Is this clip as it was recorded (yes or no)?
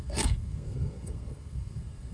no